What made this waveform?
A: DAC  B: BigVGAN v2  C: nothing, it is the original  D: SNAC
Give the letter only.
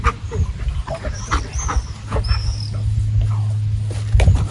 C